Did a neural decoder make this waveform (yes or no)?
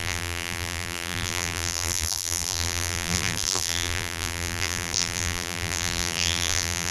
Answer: yes